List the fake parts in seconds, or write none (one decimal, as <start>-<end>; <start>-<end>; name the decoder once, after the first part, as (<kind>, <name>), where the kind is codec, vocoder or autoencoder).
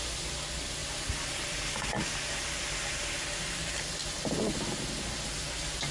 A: none